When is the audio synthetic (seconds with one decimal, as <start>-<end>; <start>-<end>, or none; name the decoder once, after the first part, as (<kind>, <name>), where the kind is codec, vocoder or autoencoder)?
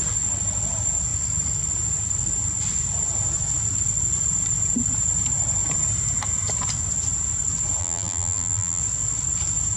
7.8-8.8 (vocoder, BigVGAN v2)